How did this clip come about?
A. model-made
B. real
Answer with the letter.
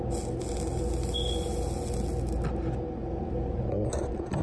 B